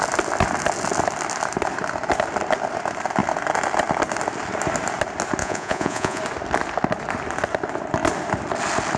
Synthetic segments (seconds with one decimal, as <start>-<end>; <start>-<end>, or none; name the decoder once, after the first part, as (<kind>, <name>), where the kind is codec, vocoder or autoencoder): 5.4-6.2 (vocoder, Vocos)